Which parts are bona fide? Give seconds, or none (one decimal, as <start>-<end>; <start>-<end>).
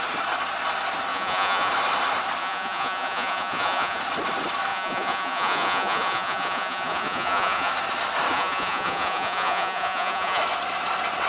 0.0-1.1; 1.7-2.4; 4.0-4.7; 7.7-8.3; 10.4-11.3